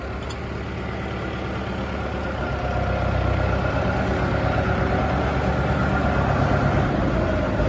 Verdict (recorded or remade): recorded